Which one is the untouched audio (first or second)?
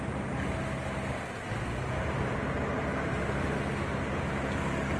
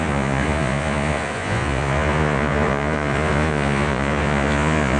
first